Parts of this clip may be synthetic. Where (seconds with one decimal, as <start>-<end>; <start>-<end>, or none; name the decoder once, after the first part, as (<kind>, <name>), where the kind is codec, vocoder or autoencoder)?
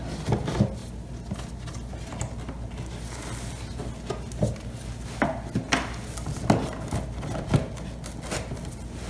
none